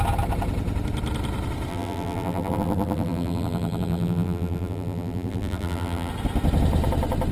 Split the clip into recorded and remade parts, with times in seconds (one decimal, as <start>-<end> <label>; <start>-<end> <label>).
0.0-1.7 recorded; 1.7-6.1 remade; 6.1-7.3 recorded